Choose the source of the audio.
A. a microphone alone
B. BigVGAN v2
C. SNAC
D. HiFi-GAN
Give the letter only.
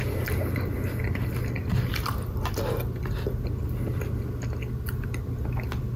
A